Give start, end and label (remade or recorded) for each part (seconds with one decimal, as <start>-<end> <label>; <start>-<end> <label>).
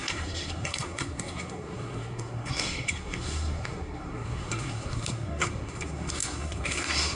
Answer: 0.0-7.2 remade